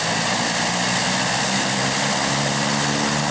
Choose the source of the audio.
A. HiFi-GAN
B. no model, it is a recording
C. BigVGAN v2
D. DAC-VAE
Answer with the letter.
B